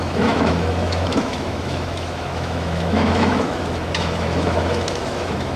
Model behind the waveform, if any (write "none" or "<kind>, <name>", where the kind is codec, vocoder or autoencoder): autoencoder, DAC-VAE